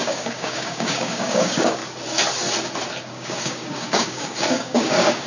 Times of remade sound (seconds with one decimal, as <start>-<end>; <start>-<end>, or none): 0.0-1.8; 3.1-5.3